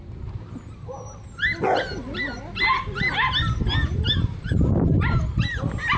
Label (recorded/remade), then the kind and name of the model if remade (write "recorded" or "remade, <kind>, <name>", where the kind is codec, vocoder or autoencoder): recorded